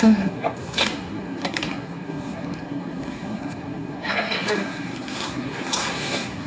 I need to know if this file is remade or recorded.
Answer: remade